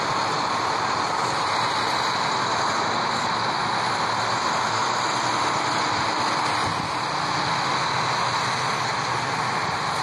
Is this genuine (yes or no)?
yes